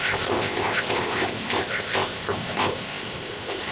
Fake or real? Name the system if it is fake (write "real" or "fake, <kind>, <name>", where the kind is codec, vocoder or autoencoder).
fake, codec, ZipCodec